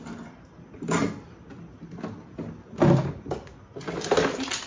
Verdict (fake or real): real